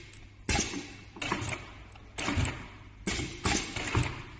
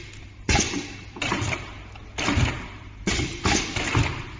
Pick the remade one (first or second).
second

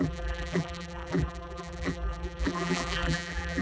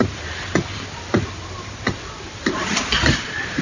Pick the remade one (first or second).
first